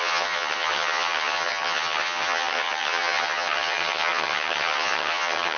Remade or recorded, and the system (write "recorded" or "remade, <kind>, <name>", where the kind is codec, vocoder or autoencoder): remade, vocoder, HiFi-GAN